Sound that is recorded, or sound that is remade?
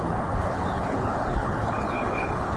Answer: remade